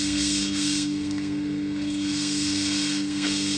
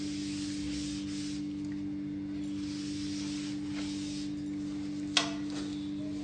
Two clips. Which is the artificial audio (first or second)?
first